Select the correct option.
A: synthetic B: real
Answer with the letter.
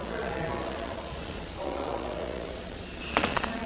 A